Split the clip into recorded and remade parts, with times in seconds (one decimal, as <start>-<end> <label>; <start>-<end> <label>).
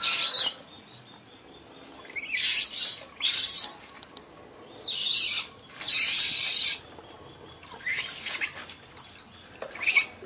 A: 0.0-10.3 recorded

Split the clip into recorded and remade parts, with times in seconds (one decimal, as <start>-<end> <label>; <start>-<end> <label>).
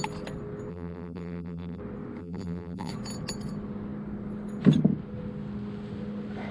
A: 0.0-0.7 recorded; 0.7-1.8 remade; 1.8-2.2 recorded; 2.2-2.9 remade; 2.9-6.5 recorded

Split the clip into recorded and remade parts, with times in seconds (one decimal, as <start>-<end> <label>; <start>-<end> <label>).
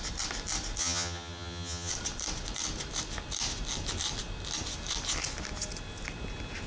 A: 0.0-0.8 recorded; 0.8-1.9 remade; 1.9-6.7 recorded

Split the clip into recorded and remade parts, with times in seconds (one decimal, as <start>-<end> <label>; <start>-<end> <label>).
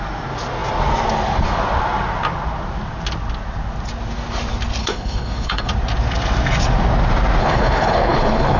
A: 0.0-4.8 recorded; 4.8-5.7 remade; 5.7-7.4 recorded; 7.4-8.6 remade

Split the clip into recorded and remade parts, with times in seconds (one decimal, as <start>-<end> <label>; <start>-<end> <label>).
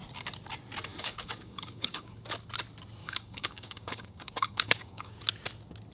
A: 0.0-0.9 recorded; 0.9-2.1 remade; 2.1-3.0 recorded; 3.0-5.2 remade; 5.2-5.9 recorded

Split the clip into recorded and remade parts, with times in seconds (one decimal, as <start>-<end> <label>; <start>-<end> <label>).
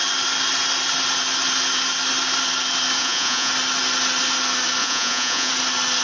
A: 0.0-3.0 recorded; 3.0-3.5 remade; 3.5-4.8 recorded; 4.8-5.5 remade; 5.5-6.0 recorded